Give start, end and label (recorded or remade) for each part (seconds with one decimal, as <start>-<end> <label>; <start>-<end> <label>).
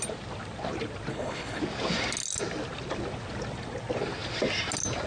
0.0-1.1 recorded; 1.1-1.6 remade; 1.6-5.1 recorded